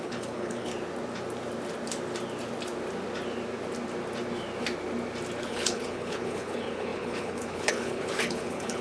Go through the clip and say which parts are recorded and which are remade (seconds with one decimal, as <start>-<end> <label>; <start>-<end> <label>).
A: 0.0-0.7 remade; 0.7-5.4 recorded; 5.4-8.8 remade